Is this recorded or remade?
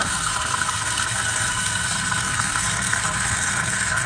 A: remade